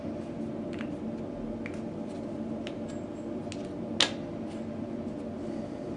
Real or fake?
real